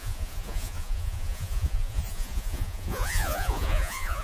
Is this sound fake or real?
fake